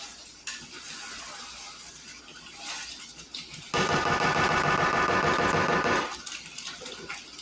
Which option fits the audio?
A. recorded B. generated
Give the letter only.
A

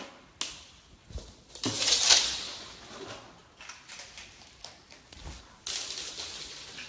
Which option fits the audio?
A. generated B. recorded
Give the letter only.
B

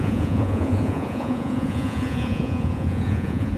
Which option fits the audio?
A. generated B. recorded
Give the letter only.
A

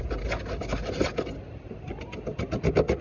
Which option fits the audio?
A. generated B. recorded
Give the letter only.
B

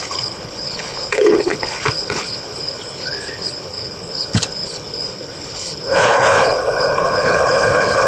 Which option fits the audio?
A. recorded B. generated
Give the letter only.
B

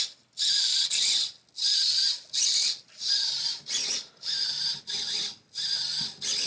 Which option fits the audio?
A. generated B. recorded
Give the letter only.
B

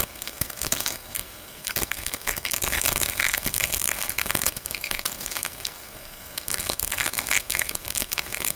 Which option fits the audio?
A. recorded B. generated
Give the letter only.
B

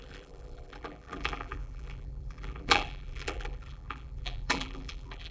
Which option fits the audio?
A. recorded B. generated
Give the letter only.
B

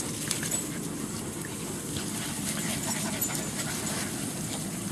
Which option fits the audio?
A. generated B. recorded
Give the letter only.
B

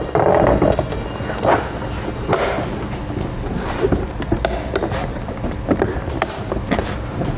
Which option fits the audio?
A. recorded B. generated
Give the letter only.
A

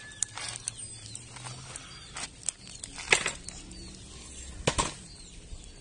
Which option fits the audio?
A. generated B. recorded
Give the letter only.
B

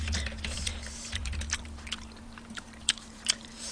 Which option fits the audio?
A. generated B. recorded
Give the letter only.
A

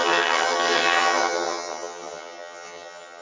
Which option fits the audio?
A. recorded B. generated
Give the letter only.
B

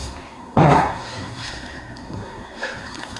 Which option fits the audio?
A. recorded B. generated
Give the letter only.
B